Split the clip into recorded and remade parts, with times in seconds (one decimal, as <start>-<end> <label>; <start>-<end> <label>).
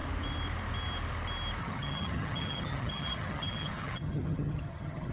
0.0-1.6 recorded; 1.6-5.1 remade